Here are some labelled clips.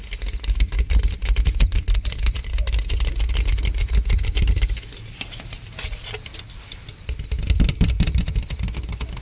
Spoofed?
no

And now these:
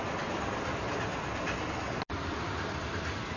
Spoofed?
no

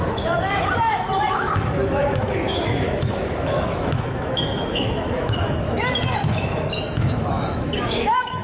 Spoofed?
yes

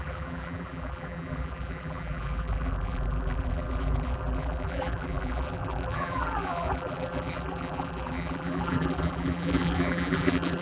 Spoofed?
yes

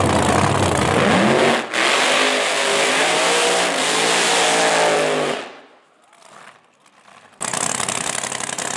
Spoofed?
no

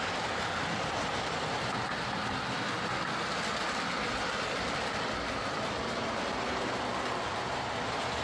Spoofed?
no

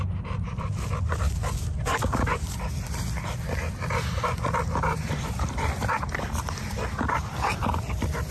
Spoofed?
no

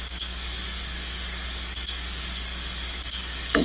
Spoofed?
yes